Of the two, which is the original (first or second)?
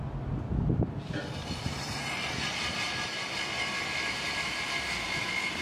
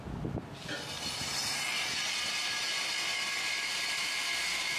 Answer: second